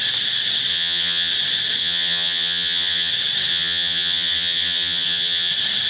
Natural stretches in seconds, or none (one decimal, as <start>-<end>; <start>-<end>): 0.0-0.7; 1.3-1.8; 3.1-3.5; 5.5-5.9